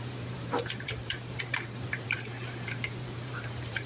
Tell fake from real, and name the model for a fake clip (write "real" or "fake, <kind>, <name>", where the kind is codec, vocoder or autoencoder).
fake, vocoder, BigVGAN v2